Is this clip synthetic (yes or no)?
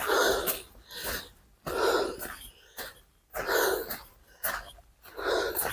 no